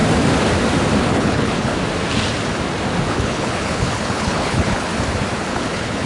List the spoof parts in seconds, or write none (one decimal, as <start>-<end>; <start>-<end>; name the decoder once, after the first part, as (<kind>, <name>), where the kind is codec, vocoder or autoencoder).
1.1-1.7 (codec, HILCodec); 3.1-4.9; 5.5-6.1